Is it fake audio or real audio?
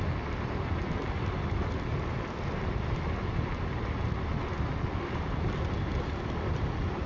real